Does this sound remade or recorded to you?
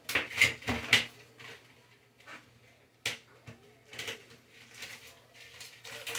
recorded